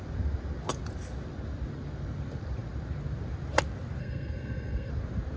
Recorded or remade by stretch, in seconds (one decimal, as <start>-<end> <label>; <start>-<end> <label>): 0.0-4.0 recorded; 4.0-4.9 remade; 4.9-5.4 recorded